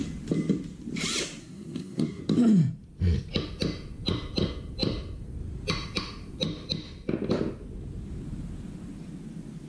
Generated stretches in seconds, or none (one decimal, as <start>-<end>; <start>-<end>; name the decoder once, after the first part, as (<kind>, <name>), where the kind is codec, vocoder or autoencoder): 1.4-2.2 (codec, SNAC)